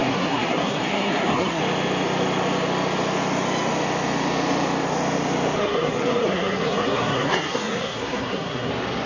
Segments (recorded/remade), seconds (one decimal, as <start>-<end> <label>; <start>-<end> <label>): 0.0-1.6 remade; 1.6-5.6 recorded; 5.6-8.7 remade; 8.7-9.1 recorded